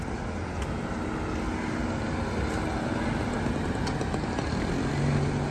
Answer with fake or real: real